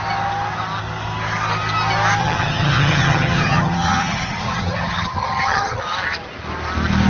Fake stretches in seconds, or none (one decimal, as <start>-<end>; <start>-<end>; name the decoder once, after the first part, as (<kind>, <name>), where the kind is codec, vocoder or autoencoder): 2.2-5.8 (vocoder, HiFi-GAN)